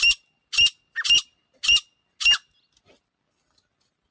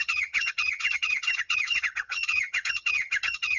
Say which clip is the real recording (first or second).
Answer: first